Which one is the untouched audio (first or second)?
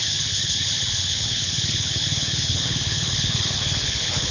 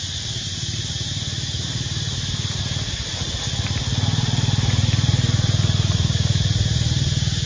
second